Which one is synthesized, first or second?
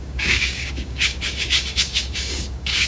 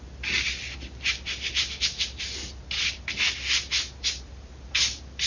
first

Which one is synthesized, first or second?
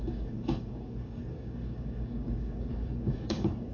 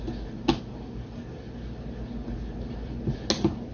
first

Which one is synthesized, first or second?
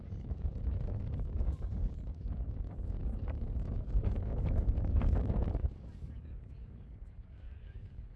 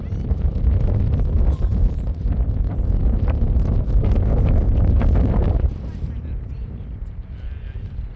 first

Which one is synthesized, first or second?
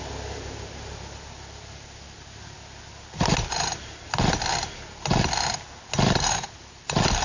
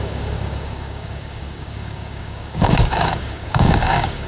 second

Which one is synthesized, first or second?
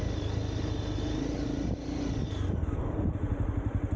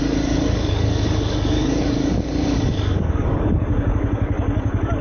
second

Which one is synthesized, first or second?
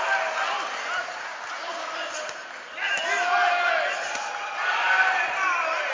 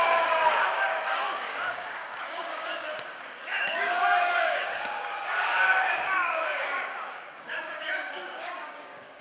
second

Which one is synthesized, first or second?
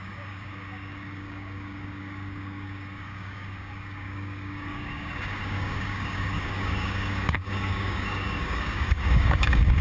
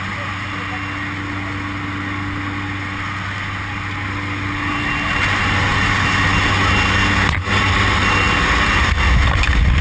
first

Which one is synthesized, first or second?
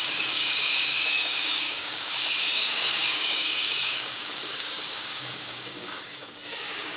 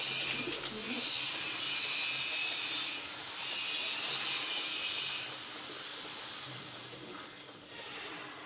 first